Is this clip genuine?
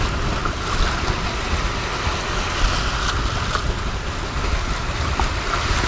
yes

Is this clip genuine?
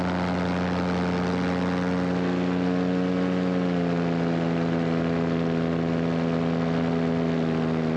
yes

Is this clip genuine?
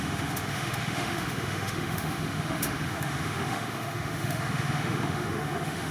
no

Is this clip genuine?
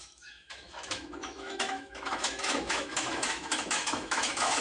no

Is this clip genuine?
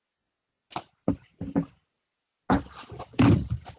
yes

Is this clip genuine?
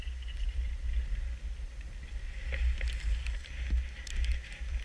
yes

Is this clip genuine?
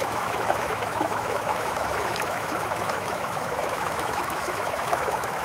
no